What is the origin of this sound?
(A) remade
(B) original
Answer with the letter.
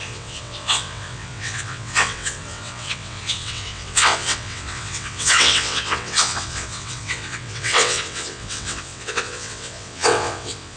A